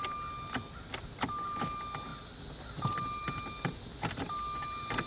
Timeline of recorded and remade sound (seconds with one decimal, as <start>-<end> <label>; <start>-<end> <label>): 0.0-5.1 recorded